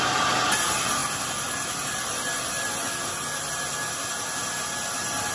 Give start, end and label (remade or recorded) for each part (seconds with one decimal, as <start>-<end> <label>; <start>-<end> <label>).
0.0-5.3 recorded